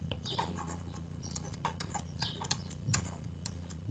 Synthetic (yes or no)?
yes